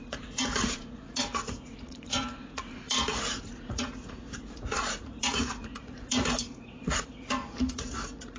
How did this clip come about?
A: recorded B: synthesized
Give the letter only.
B